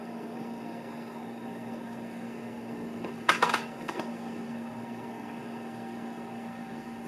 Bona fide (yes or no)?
no